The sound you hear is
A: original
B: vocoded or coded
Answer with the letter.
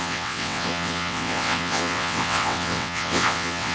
B